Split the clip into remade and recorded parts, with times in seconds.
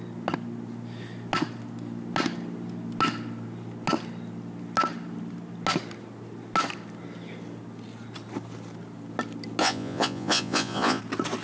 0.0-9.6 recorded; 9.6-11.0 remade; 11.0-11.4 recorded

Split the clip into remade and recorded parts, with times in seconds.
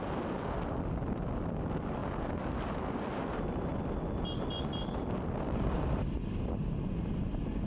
0.0-7.7 recorded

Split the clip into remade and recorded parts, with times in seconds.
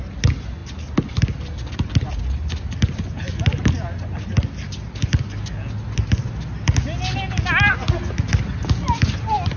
0.0-9.6 recorded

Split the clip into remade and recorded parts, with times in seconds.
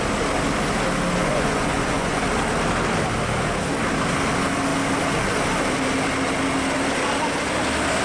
0.0-1.2 recorded; 1.2-2.2 remade; 2.2-8.0 recorded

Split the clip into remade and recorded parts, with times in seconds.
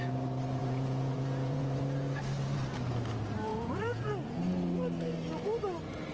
0.0-0.6 recorded; 0.6-1.8 remade; 1.8-3.5 recorded; 3.5-4.4 remade; 4.4-6.1 recorded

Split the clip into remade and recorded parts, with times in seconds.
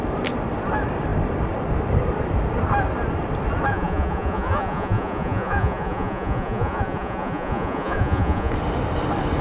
0.0-3.7 recorded; 3.7-8.5 remade; 8.5-9.4 recorded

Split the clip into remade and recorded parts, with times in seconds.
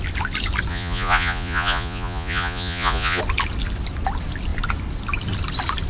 0.0-0.7 recorded; 0.7-3.2 remade; 3.2-5.9 recorded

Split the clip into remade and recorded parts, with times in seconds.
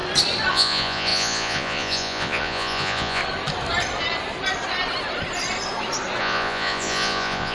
0.0-0.5 recorded; 0.5-3.2 remade; 3.2-6.2 recorded; 6.2-7.5 remade